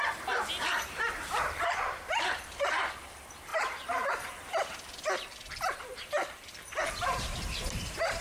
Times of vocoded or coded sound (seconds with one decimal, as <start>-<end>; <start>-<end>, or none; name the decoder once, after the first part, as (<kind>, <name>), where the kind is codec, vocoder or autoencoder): 0.0-8.2 (vocoder, BigVGAN v2)

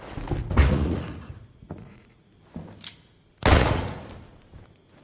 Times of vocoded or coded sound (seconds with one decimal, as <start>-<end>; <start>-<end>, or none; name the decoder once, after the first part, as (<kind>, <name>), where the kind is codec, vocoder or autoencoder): 0.4-2.2 (vocoder, Vocos); 3.5-4.0

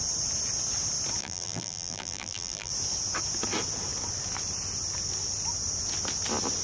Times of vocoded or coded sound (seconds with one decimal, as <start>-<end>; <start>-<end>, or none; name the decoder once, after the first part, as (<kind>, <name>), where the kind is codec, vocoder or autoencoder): 1.2-2.7 (vocoder, BigVGAN v2)

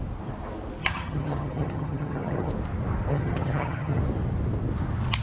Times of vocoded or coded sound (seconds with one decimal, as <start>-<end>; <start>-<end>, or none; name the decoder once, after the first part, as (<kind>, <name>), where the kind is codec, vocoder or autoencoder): 0.8-2.5 (vocoder, HiFi-GAN); 3.1-4.0

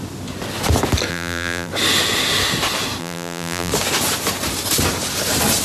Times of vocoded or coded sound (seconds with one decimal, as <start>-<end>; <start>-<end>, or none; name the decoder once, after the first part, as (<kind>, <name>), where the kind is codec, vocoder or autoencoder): 1.1-1.7 (vocoder, BigVGAN v2); 3.0-3.7

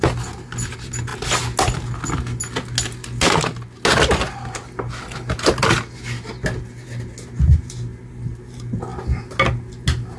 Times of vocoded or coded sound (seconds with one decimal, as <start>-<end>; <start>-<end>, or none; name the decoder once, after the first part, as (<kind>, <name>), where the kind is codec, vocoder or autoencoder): none